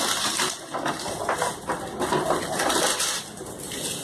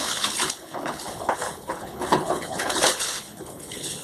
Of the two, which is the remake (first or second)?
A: second